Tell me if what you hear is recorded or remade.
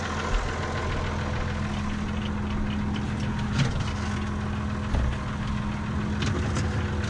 recorded